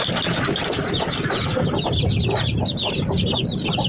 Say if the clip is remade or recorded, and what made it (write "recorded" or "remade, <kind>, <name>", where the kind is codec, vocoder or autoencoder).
recorded